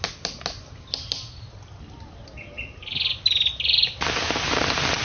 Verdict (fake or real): real